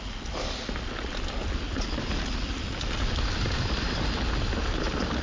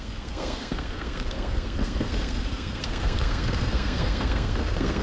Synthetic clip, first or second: second